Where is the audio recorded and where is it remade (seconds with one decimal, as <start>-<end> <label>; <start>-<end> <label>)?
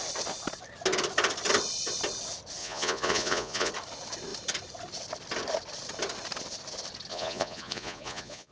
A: 0.0-2.6 recorded; 2.6-3.7 remade; 3.7-7.1 recorded; 7.1-8.5 remade